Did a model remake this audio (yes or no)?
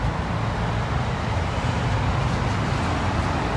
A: no